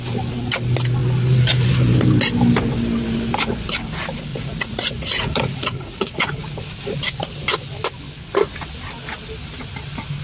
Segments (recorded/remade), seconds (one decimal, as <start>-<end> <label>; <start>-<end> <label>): 0.0-4.3 recorded; 4.3-6.4 remade; 6.4-10.2 recorded